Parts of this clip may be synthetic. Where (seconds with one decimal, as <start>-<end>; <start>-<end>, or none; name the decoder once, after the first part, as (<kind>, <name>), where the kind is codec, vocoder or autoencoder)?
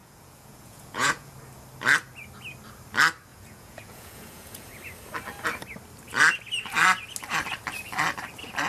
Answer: 0.0-1.3 (vocoder, Vocos); 3.3-4.7